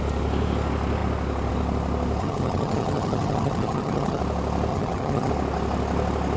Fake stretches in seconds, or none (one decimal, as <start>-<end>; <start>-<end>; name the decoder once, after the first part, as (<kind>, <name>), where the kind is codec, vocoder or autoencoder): 2.2-4.2 (vocoder, HiFi-GAN); 4.7-5.3